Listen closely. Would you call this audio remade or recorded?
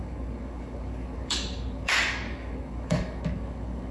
remade